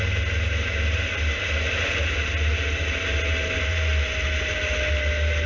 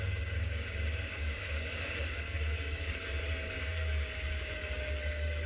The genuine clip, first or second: first